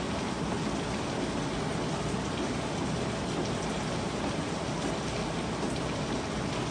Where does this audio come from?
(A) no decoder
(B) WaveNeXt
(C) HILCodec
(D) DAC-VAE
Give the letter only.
A